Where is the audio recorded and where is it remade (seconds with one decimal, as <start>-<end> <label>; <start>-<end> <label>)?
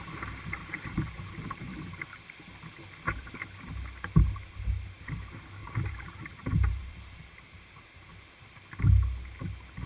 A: 0.0-0.6 recorded; 0.6-2.5 remade; 2.5-5.6 recorded; 5.6-8.1 remade; 8.1-9.9 recorded